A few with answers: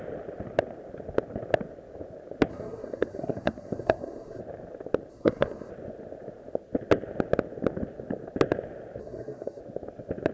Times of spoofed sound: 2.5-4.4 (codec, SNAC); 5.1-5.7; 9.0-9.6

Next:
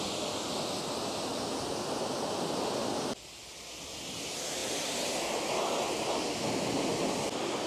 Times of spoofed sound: none

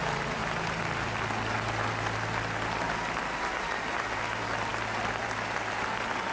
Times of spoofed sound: none